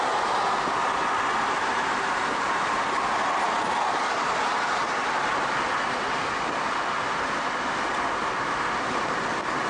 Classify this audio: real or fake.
real